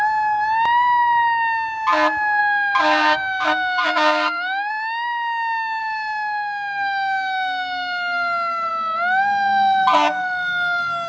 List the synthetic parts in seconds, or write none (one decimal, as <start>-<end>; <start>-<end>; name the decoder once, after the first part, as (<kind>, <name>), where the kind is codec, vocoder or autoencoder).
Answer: 2.4-4.7 (codec, DAC); 5.8-8.7